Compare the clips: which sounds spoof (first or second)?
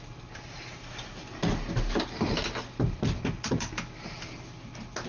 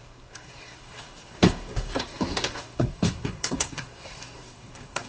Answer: second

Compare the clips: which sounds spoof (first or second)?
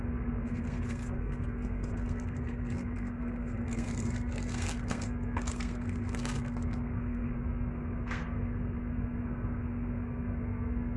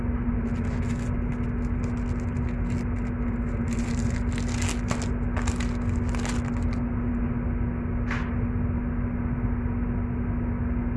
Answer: first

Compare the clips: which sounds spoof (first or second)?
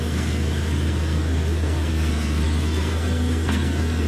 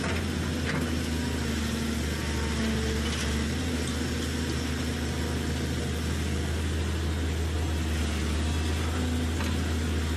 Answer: first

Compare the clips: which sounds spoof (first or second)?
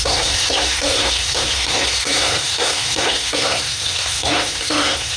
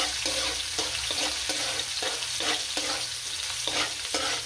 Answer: first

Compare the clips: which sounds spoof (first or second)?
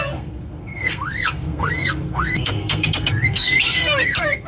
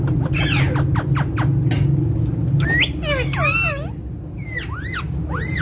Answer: first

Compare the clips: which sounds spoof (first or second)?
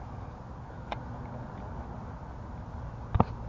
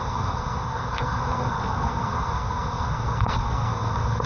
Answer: second